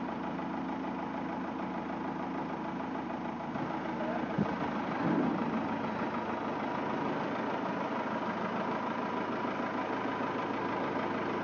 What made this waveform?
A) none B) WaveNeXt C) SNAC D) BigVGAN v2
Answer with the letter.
A